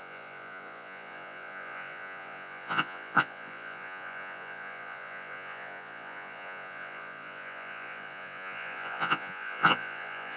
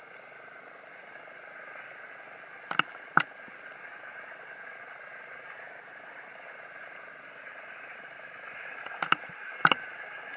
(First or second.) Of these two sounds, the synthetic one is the first